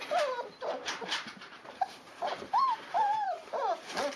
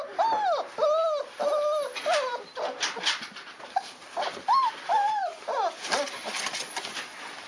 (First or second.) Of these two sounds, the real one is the second